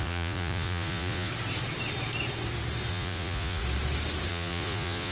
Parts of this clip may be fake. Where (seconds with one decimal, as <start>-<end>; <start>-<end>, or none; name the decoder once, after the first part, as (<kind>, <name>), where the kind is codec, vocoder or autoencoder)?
0.0-1.3 (vocoder, Vocos); 2.9-3.6; 4.3-5.1